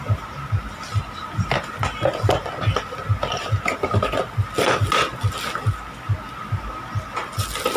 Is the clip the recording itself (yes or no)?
yes